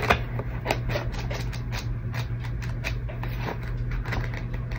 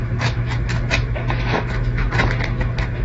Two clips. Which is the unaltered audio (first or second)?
first